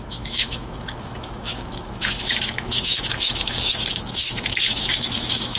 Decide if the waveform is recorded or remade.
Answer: remade